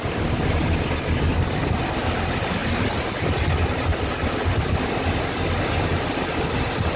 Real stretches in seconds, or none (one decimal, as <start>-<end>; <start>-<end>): 0.0-0.6; 1.5-2.6; 4.5-7.0